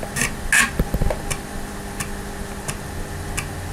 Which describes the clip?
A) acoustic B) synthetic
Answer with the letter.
A